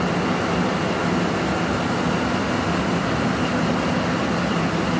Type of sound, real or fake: real